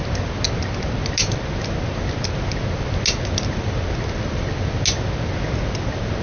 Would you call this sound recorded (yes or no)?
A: yes